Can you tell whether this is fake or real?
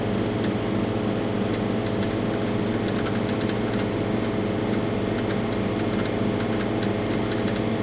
real